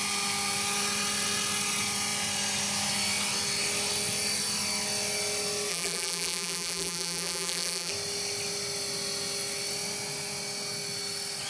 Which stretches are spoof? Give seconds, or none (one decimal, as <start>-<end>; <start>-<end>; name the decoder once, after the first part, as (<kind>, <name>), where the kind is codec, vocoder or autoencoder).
5.7-7.9 (vocoder, BigVGAN v2)